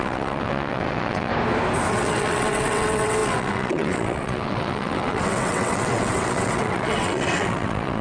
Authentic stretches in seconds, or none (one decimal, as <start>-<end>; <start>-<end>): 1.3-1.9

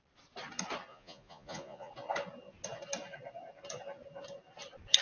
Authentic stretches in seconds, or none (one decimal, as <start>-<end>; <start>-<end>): 0.0-0.9; 1.9-5.0

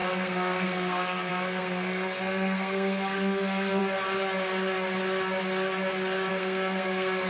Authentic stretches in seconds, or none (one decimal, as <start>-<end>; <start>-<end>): 3.8-6.3